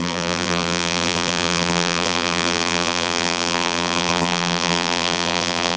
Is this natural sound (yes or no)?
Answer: no